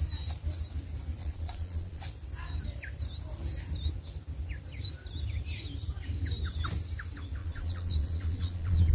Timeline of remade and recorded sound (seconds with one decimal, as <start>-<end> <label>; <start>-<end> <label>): 0.0-1.2 recorded; 1.2-2.0 remade; 2.0-7.4 recorded; 7.4-8.9 remade